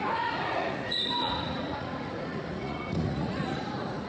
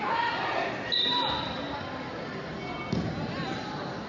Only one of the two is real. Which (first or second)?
second